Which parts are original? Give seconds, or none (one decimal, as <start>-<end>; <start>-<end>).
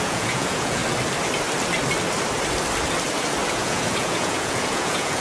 0.8-3.5